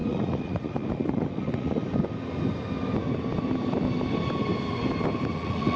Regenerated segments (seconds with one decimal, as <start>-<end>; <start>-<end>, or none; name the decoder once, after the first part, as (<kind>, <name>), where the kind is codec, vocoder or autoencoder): 0.0-1.8 (vocoder, Vocos); 5.3-5.8